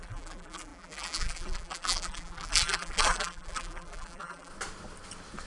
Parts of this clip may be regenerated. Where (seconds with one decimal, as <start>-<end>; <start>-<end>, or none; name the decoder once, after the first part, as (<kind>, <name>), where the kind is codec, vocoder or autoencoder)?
0.0-4.5 (vocoder, BigVGAN v2)